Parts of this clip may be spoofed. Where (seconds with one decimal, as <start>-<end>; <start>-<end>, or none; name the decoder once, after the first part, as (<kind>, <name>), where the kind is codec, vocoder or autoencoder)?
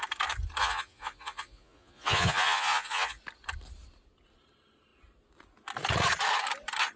0.6-3.2 (vocoder, Vocos)